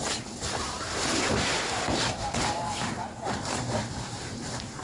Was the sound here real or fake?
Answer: fake